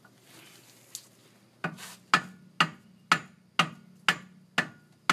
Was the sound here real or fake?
real